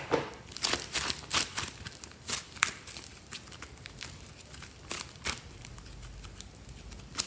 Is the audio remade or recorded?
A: recorded